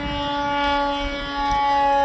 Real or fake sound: real